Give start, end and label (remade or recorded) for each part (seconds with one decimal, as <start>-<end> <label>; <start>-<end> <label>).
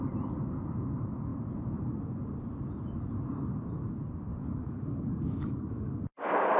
0.0-4.4 recorded; 4.4-5.9 remade; 5.9-6.6 recorded